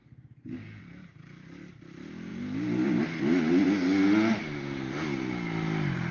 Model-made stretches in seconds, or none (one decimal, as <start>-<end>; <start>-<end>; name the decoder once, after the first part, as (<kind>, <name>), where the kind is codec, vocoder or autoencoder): none